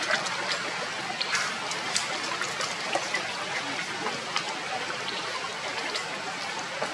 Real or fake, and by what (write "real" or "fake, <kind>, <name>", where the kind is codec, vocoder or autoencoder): real